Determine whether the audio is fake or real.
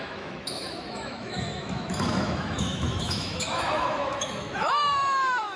fake